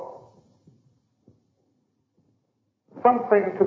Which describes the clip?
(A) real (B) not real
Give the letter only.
B